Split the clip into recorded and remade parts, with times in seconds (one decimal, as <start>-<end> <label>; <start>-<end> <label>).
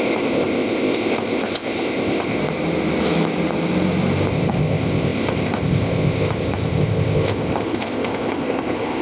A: 0.0-2.4 remade; 2.4-4.3 recorded; 4.3-9.0 remade